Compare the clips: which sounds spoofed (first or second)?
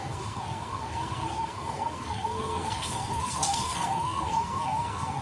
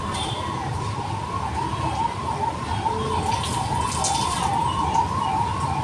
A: first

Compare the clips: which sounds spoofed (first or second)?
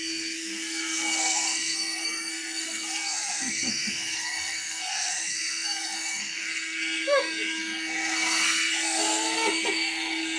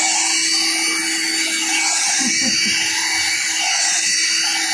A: first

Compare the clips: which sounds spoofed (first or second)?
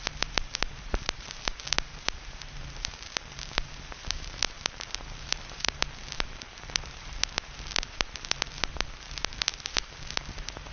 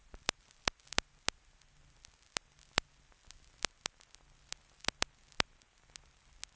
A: first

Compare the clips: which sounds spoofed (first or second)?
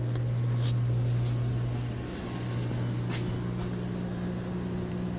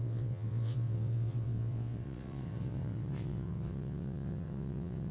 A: second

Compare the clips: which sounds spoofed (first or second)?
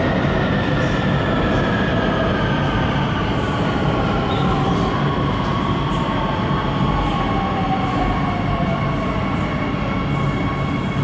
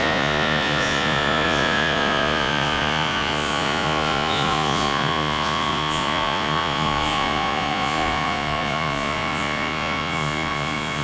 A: second